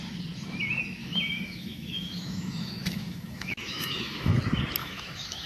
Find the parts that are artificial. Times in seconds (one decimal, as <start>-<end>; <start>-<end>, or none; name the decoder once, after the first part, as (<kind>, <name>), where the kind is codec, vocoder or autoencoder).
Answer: 1.0-4.3 (autoencoder, DAC-VAE); 4.8-5.5